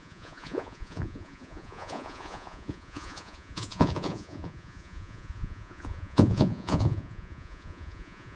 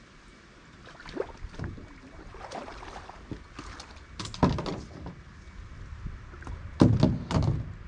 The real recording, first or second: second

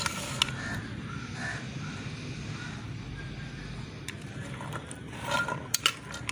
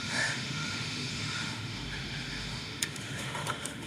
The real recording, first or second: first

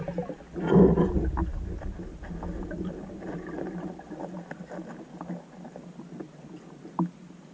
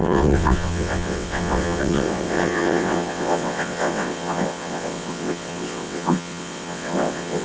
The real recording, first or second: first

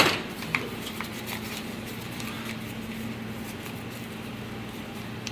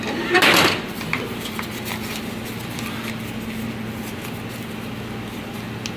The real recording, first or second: second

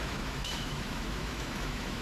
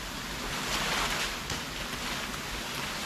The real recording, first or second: second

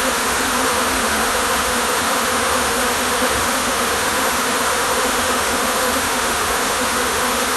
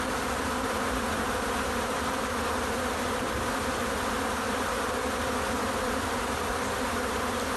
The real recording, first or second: second